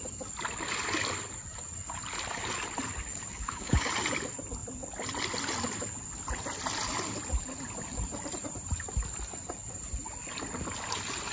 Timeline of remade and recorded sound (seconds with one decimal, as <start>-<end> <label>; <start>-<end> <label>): 0.0-3.1 recorded; 3.1-3.9 remade; 3.9-11.3 recorded